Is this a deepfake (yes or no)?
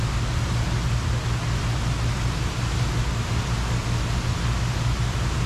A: no